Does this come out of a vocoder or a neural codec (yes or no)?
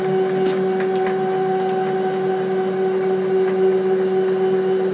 no